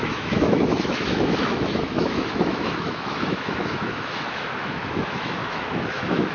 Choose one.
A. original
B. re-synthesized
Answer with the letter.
B